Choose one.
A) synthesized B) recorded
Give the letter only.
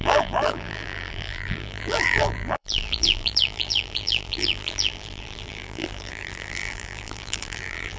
A